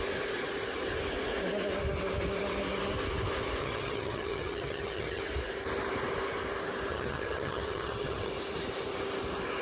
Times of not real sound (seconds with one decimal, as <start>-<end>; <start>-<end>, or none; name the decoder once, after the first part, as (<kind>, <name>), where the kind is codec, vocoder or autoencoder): 3.6-5.2 (vocoder, HiFi-GAN); 6.9-8.3